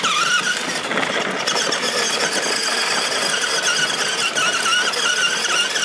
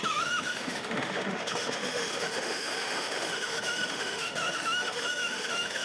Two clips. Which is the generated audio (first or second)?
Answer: second